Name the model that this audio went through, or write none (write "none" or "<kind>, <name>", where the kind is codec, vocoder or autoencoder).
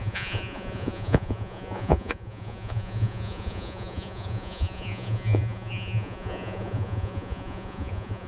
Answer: vocoder, Vocos